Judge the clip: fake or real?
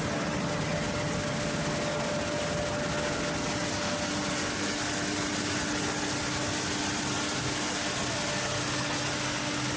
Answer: real